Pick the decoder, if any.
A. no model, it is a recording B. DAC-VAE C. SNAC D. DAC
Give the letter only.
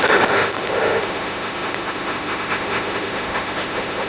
B